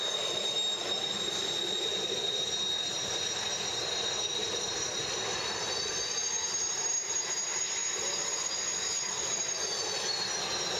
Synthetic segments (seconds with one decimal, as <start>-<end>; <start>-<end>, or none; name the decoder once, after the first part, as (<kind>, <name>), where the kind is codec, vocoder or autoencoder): none